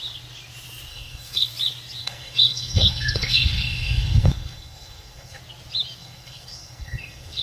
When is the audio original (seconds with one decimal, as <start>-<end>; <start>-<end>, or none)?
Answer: 0.0-0.9; 1.5-2.0; 5.4-6.0